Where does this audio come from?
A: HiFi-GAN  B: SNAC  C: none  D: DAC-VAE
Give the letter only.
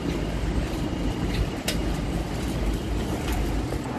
C